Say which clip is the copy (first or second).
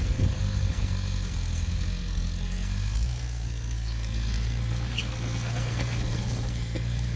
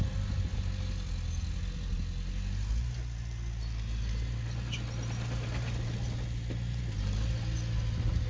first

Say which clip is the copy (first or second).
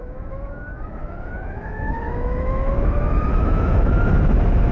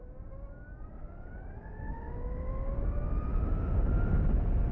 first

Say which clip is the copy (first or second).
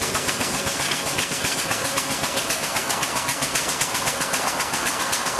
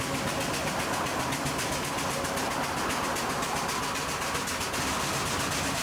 first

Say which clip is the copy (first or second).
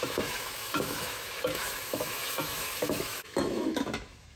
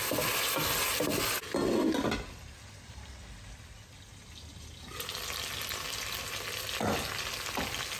first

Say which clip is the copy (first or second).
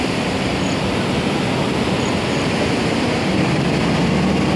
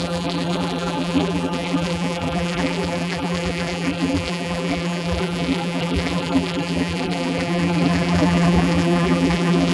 second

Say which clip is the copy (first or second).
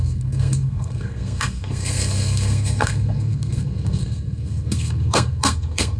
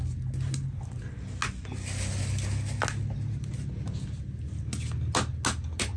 first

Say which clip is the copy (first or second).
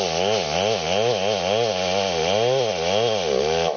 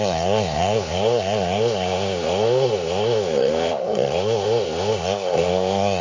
second